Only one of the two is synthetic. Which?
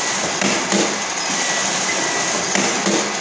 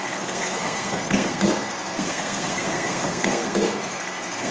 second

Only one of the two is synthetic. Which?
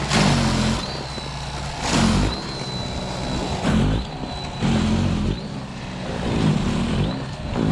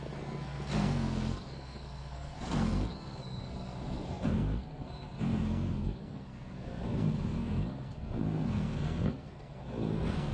second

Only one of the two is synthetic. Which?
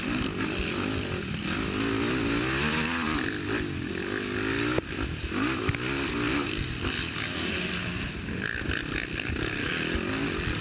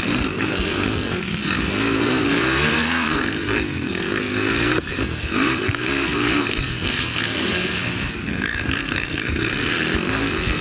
second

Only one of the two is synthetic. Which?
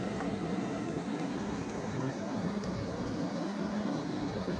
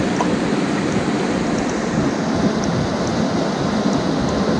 first